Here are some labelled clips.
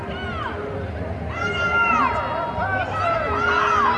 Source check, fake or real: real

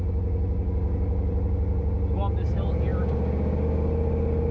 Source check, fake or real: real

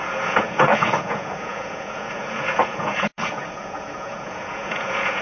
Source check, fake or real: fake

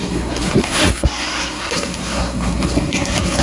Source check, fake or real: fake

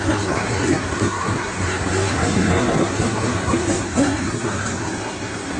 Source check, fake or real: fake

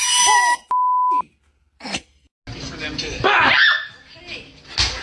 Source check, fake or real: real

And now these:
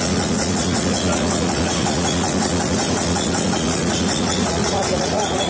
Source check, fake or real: fake